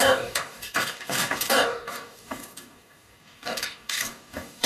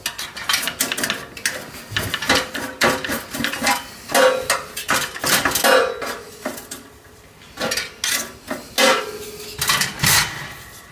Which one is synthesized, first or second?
first